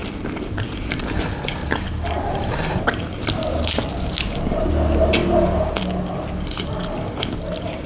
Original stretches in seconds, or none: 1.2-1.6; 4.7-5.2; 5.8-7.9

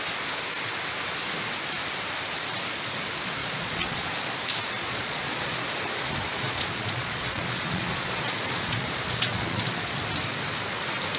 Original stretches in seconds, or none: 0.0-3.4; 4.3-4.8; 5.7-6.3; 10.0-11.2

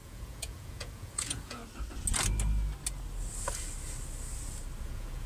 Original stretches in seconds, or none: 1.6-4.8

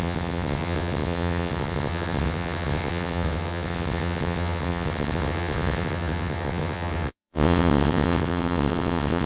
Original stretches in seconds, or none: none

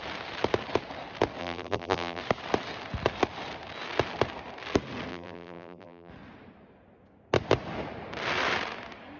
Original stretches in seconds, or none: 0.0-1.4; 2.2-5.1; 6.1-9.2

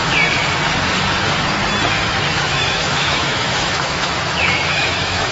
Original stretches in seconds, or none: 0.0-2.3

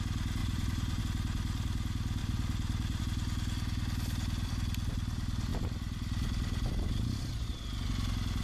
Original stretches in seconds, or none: 0.0-0.4; 1.0-2.2; 3.0-8.4

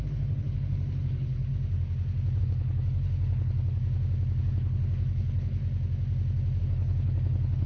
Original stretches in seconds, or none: 1.5-2.4; 3.8-4.4; 5.6-6.6